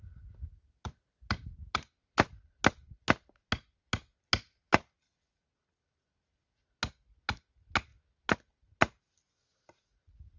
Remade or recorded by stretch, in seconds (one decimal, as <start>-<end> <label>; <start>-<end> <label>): 0.0-10.4 recorded